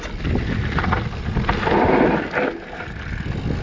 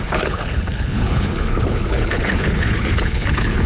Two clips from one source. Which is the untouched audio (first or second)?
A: first